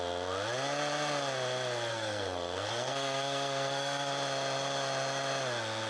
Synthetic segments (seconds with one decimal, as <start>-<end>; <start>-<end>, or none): 1.9-4.1

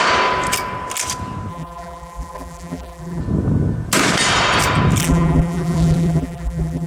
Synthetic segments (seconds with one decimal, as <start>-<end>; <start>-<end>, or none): 1.5-3.2; 5.0-6.9

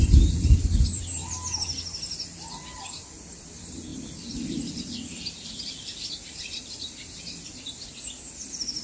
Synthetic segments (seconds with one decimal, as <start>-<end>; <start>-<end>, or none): 0.0-1.2; 3.4-8.8

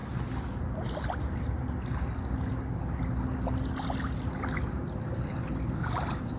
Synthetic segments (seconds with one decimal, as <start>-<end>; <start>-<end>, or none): none